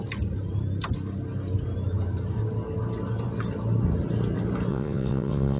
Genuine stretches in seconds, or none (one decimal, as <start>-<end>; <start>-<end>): 0.0-4.7